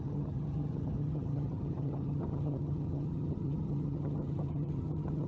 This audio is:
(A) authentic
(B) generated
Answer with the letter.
B